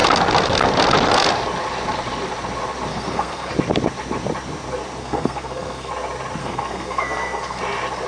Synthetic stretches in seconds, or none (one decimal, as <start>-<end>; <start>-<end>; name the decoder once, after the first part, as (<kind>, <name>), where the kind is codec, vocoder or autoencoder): 2.9-3.5 (codec, SNAC); 5.0-5.9; 6.4-7.6

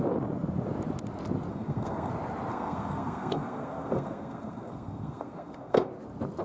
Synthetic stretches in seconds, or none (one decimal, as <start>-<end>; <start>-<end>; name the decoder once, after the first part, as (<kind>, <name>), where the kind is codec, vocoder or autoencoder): 1.5-2.1 (codec, SNAC); 2.5-5.9

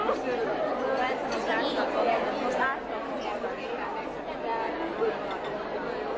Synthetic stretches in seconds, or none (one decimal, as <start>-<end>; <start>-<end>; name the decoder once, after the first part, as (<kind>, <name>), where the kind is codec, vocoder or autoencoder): none

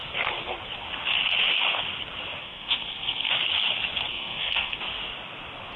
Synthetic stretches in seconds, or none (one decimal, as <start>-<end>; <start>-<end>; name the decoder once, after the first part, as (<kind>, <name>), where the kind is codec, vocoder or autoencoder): 2.4-3.3 (codec, SNAC); 4.1-4.8

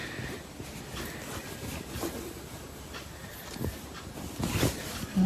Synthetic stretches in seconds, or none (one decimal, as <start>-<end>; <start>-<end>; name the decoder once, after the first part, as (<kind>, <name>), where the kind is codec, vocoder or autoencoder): none

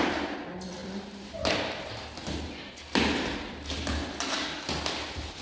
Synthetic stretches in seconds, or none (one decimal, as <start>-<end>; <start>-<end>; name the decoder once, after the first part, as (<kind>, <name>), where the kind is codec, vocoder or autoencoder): none